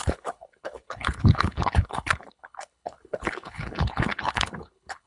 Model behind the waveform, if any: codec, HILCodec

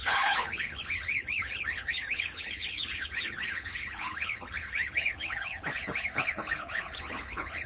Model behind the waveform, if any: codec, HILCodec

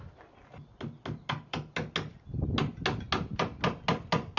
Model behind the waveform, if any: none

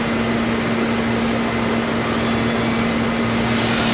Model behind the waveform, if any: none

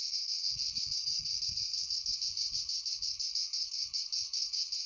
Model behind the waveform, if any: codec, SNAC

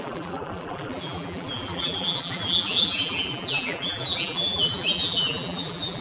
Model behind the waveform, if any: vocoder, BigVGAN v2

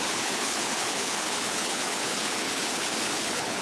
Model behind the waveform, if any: codec, HILCodec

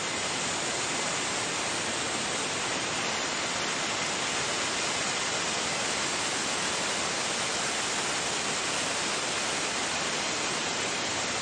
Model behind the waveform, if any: none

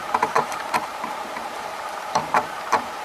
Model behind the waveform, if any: vocoder, BigVGAN v2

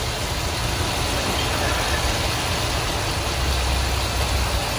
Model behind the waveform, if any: none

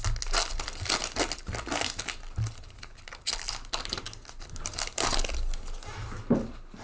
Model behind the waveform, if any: none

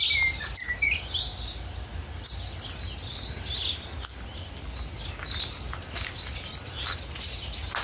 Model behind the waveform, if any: none